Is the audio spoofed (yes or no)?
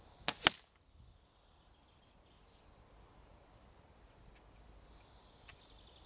no